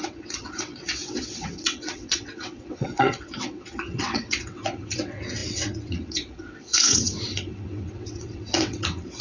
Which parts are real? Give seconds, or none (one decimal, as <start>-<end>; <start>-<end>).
none